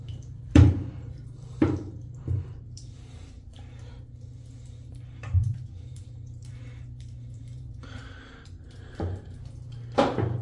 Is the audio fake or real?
fake